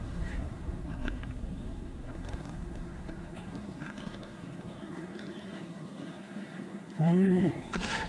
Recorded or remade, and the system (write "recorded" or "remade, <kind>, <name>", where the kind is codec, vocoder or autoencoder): remade, codec, SNAC